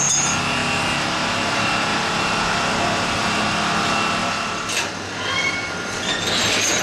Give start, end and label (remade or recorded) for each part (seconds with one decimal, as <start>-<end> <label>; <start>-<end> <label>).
0.0-4.2 recorded; 4.2-5.6 remade; 5.6-6.8 recorded

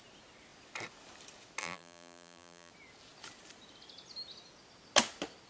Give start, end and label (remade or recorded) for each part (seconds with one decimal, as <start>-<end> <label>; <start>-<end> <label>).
0.0-1.6 recorded; 1.6-2.7 remade; 2.7-5.5 recorded